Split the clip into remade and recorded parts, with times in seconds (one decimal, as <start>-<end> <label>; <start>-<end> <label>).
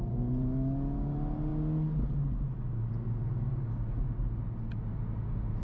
0.0-5.6 recorded